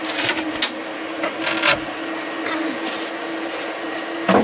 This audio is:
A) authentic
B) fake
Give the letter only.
A